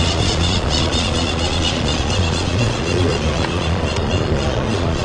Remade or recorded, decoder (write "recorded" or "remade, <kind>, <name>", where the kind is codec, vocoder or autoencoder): remade, vocoder, Vocos